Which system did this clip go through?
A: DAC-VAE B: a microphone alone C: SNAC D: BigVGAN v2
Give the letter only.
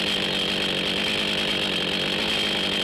D